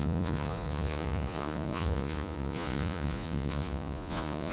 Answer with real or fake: fake